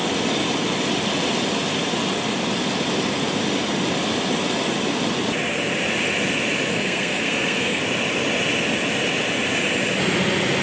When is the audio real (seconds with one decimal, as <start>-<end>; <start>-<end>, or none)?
0.0-6.7; 7.8-10.6